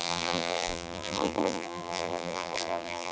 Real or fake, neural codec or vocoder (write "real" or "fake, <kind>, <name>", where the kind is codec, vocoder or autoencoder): fake, vocoder, BigVGAN v2